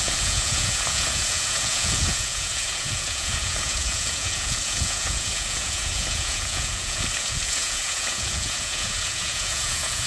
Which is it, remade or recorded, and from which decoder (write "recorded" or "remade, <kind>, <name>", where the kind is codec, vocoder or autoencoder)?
remade, vocoder, Vocos